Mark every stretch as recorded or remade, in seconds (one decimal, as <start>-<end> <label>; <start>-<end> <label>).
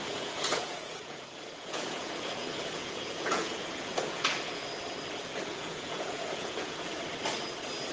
0.0-4.7 remade; 4.7-5.5 recorded; 5.5-7.0 remade; 7.0-7.9 recorded